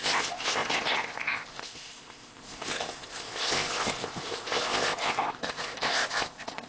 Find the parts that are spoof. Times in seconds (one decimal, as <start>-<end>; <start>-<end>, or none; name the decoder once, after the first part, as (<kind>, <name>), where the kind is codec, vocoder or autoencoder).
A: 0.0-6.7 (codec, ZipCodec)